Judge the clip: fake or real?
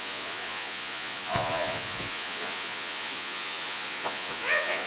fake